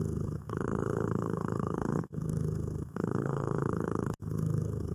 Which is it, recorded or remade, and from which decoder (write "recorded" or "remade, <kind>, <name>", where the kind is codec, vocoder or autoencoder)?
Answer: remade, codec, SNAC